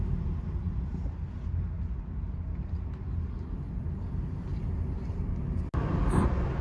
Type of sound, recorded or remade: recorded